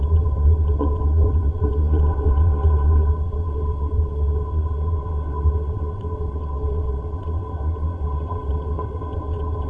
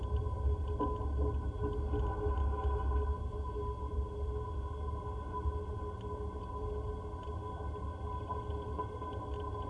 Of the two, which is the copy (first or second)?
first